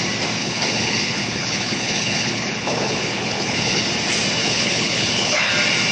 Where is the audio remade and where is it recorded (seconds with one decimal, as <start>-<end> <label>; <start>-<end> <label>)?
0.0-0.4 recorded; 0.4-3.8 remade; 3.8-4.4 recorded; 4.4-5.5 remade; 5.5-5.9 recorded